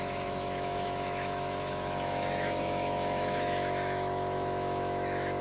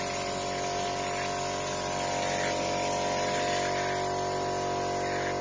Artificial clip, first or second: first